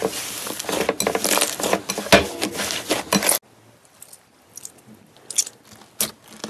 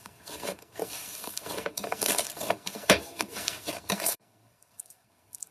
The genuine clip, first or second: first